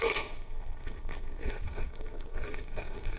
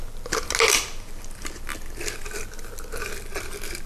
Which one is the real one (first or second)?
second